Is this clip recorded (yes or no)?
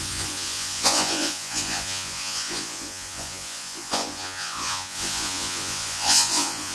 no